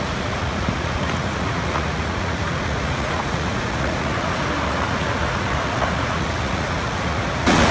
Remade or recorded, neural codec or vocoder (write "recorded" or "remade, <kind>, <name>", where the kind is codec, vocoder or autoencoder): remade, vocoder, Vocos